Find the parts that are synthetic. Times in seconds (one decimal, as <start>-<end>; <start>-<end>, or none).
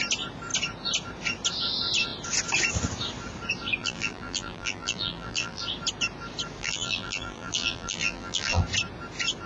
3.8-5.6; 6.6-8.6